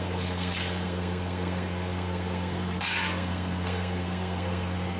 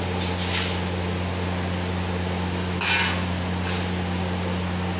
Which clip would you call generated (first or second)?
first